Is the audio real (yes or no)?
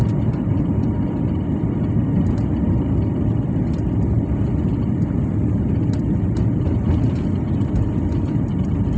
yes